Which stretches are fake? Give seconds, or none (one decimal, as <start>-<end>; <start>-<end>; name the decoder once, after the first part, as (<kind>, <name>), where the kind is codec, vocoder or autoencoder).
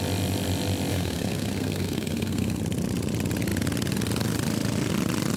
0.9-2.6 (codec, SNAC)